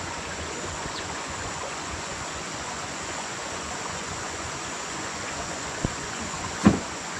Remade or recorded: remade